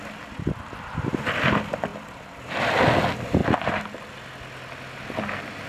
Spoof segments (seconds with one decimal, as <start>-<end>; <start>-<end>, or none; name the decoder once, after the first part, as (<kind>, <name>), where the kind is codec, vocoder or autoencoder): none